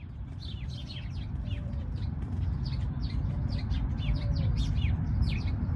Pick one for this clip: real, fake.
fake